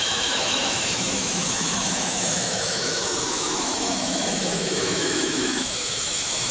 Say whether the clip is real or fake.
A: fake